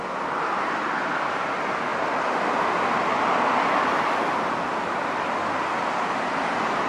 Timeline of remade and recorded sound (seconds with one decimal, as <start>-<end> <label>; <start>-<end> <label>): 0.0-6.9 recorded